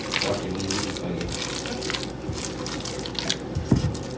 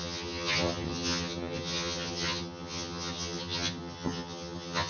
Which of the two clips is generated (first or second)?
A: second